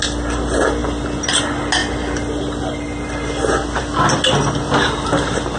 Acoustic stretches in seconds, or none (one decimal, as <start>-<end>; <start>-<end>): 0.0-5.6